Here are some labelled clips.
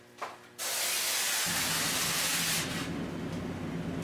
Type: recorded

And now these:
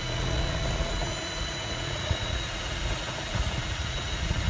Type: remade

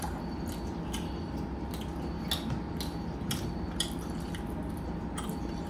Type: recorded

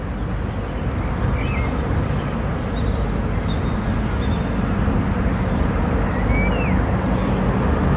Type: recorded